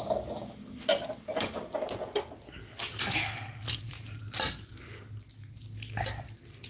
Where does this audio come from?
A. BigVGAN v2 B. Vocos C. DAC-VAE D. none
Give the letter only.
D